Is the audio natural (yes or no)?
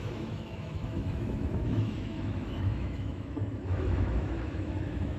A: no